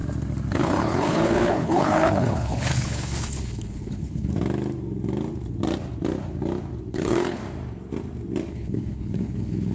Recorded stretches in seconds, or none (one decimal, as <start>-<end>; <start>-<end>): 0.0-0.5; 4.3-6.9; 7.4-8.5